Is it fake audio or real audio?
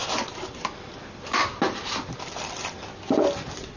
real